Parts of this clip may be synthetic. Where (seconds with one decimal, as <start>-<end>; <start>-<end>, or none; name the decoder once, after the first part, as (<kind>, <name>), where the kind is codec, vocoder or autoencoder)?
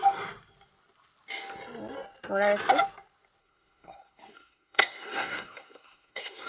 3.4-6.5 (codec, SNAC)